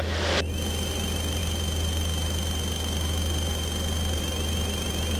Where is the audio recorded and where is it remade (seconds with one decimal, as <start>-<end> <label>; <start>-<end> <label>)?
0.0-5.2 recorded